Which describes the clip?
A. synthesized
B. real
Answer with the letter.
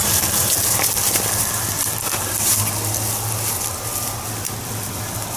B